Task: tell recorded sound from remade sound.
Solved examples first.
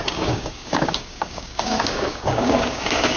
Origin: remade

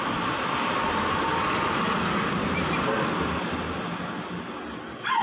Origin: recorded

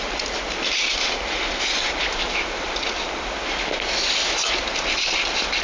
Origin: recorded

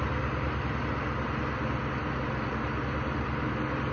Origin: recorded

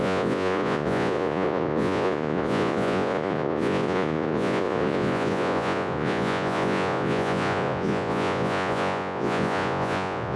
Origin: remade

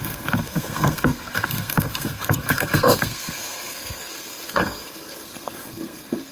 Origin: remade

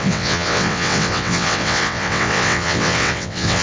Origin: remade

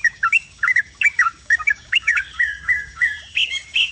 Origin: remade